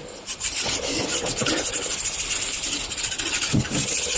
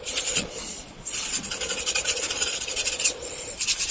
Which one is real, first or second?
first